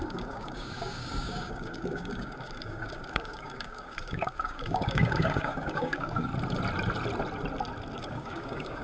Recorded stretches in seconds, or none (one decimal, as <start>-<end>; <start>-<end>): 6.3-8.0